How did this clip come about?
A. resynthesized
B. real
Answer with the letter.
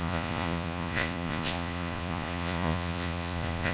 A